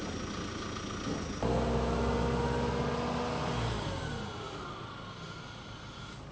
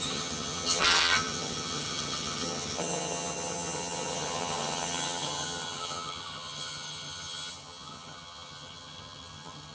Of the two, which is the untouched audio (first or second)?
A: first